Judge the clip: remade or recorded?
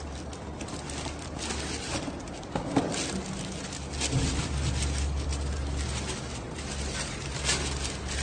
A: recorded